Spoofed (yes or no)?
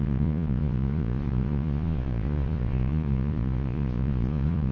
yes